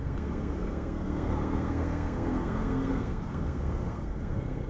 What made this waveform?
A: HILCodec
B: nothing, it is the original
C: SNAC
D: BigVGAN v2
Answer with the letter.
C